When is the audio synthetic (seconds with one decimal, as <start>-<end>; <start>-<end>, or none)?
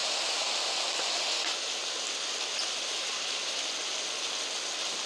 3.1-5.1